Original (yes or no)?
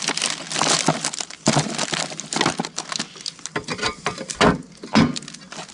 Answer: yes